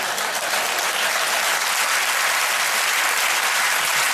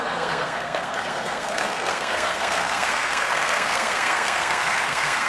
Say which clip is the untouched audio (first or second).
first